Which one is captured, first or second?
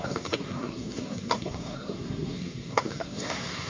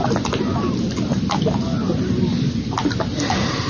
second